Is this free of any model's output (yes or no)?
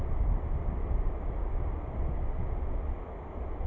yes